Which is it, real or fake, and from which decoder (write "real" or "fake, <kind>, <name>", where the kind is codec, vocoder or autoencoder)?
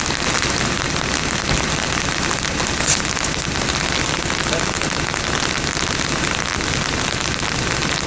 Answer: real